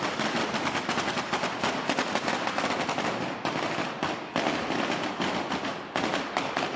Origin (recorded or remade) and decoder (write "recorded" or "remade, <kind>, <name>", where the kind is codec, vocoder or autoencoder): recorded